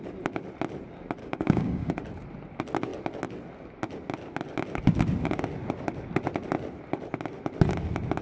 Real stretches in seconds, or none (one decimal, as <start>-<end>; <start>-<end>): 0.0-1.2; 1.9-8.2